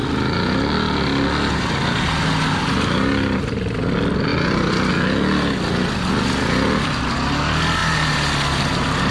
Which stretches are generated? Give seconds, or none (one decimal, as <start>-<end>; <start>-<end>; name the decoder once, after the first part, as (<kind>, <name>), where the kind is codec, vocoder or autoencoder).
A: 4.3-4.9 (vocoder, BigVGAN v2)